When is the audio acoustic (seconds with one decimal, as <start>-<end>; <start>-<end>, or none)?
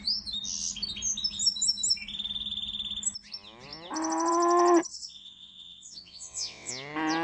0.0-4.9; 6.7-7.2